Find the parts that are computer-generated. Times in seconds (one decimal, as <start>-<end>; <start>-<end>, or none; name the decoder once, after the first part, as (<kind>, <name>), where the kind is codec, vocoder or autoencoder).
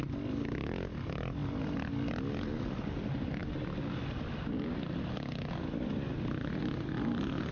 none